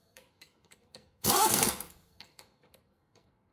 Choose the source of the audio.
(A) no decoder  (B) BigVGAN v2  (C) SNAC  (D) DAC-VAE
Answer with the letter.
C